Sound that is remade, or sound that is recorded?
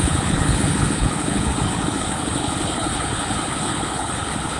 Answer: remade